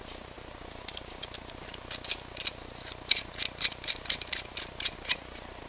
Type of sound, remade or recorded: recorded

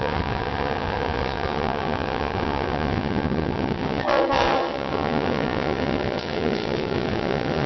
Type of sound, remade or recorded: remade